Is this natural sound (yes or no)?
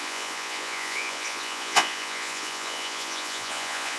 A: no